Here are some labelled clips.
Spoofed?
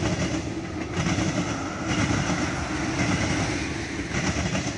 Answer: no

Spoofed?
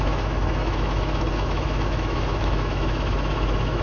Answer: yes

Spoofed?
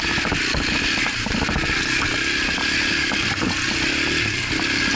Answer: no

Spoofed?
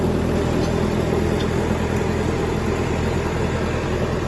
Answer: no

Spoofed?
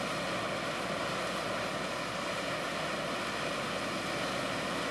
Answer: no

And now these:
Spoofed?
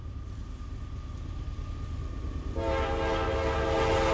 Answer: no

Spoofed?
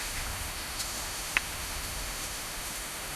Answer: yes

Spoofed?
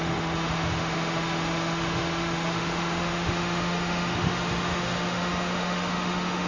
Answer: yes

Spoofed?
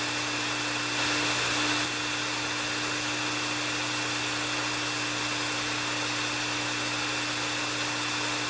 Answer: no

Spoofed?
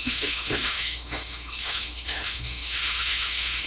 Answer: yes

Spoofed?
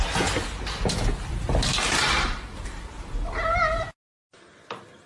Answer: no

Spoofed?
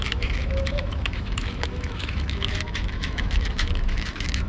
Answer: yes